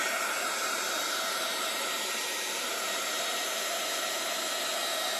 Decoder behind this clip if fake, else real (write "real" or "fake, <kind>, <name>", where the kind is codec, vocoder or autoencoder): fake, vocoder, BigVGAN v2